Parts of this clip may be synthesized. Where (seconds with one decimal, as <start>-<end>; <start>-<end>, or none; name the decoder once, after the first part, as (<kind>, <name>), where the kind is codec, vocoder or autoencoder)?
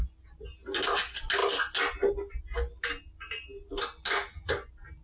none